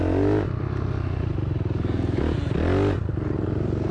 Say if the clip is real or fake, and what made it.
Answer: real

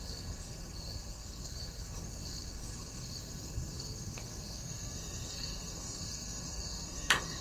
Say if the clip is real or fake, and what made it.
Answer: fake, codec, SNAC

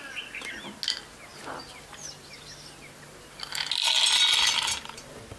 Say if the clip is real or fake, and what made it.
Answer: real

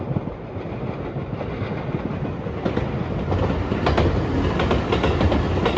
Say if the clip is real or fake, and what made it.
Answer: real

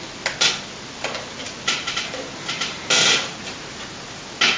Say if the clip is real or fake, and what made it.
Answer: real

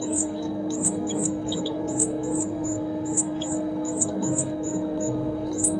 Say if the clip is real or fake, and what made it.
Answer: fake, codec, SNAC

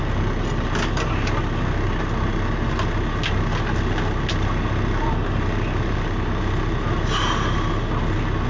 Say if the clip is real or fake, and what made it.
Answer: real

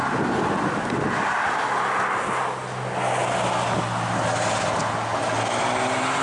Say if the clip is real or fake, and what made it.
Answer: real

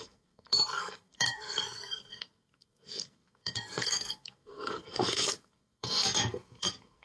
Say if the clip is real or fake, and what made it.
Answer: fake, codec, SNAC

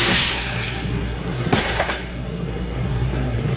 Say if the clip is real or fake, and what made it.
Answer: fake, codec, SNAC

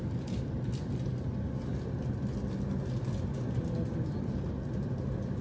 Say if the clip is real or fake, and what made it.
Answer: real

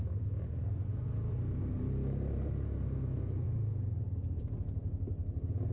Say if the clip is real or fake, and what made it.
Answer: real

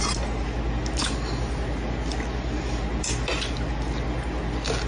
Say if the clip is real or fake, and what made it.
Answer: real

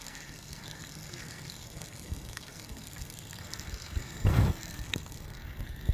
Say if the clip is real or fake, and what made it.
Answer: fake, codec, SNAC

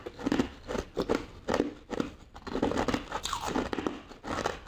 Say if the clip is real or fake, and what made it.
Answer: real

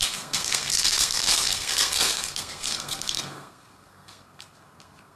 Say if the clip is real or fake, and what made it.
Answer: fake, codec, SNAC